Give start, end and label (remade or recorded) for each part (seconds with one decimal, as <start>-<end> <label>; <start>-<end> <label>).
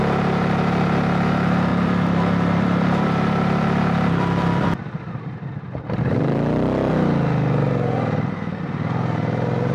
0.0-1.7 recorded; 1.7-6.9 remade; 6.9-9.7 recorded